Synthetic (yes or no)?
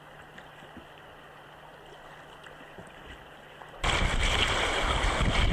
no